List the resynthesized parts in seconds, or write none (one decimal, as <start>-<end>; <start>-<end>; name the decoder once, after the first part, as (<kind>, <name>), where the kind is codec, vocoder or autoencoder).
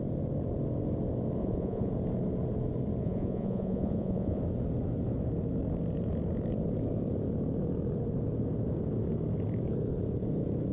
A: 1.4-1.9 (vocoder, Vocos); 3.0-4.4